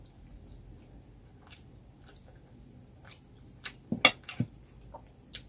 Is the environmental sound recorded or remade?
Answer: recorded